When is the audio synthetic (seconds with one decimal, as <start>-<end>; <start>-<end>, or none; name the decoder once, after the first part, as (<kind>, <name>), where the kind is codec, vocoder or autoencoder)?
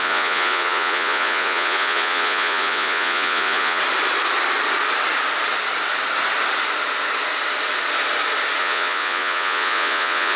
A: 0.0-3.8 (vocoder, Vocos); 8.6-10.4